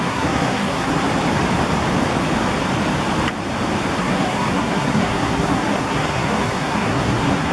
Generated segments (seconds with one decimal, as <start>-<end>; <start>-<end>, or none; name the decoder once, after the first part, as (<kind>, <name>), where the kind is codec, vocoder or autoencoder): 0.0-1.1 (codec, SNAC); 4.0-7.5